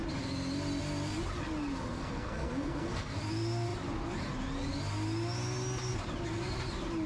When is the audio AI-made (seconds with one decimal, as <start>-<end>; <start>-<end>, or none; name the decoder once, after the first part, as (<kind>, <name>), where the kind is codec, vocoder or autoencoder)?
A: 1.9-3.2 (codec, SNAC)

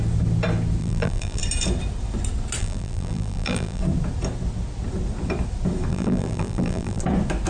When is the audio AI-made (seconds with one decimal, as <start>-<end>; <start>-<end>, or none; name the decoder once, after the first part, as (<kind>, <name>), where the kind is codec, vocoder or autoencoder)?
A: 0.8-1.4 (vocoder, BigVGAN v2); 2.6-3.8; 5.9-7.0

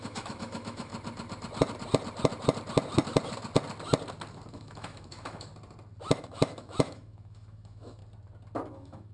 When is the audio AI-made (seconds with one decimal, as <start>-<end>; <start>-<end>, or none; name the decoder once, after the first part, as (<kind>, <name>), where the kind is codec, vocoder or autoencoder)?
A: 0.0-0.9 (autoencoder, DAC-VAE); 4.5-5.5; 6.2-8.0; 8.7-9.1